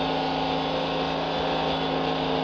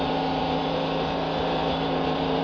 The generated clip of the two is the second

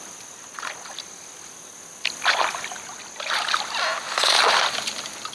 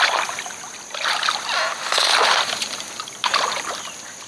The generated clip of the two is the second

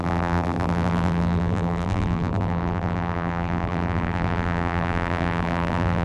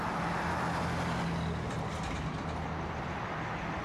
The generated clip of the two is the first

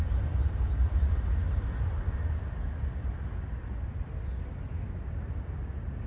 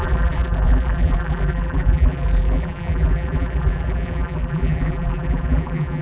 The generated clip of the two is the second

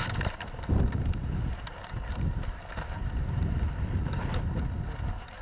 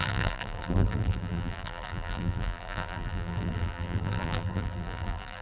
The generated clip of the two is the second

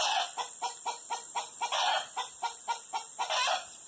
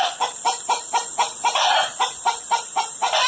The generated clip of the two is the second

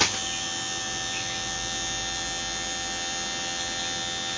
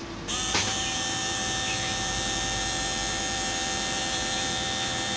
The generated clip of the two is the second